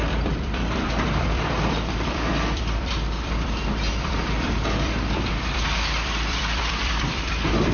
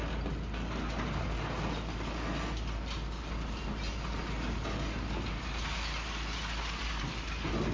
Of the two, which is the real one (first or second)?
second